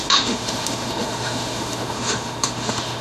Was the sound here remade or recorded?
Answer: remade